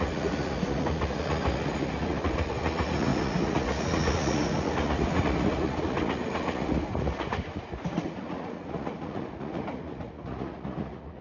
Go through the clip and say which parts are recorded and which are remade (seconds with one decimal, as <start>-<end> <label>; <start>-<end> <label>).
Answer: 0.0-11.2 remade

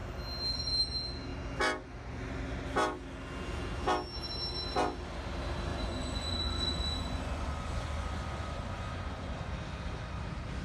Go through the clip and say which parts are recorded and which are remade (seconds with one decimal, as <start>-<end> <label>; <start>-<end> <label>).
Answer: 0.0-5.7 recorded; 5.7-9.5 remade; 9.5-10.6 recorded